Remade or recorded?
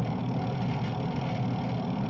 recorded